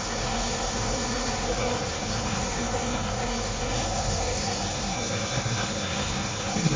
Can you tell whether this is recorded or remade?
remade